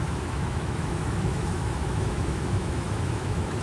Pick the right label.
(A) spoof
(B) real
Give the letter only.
A